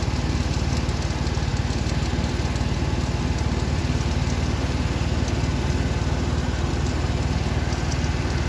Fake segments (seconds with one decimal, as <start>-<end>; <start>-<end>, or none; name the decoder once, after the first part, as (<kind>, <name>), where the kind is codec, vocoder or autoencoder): none